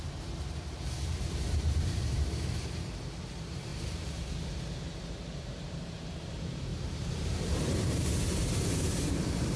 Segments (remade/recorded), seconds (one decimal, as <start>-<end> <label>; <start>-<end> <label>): 0.0-3.7 remade; 3.7-5.1 recorded; 5.1-9.6 remade